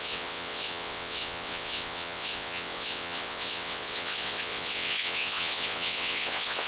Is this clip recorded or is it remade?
remade